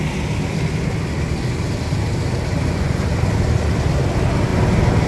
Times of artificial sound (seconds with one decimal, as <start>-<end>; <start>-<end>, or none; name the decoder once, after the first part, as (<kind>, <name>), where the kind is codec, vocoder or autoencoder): 2.5-3.1 (vocoder, Vocos)